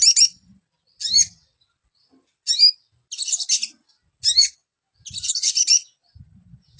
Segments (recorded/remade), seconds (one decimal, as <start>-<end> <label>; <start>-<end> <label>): 0.0-4.4 recorded; 4.4-4.9 remade; 4.9-5.7 recorded; 5.7-6.8 remade